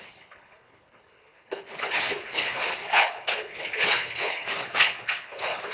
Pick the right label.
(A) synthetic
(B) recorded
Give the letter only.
A